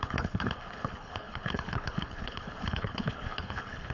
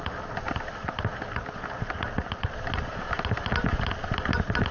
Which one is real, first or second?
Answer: second